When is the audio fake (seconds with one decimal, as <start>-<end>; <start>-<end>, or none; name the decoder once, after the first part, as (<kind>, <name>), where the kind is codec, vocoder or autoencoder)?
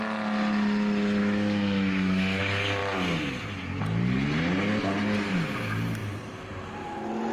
1.2-2.4 (autoencoder, DAC-VAE)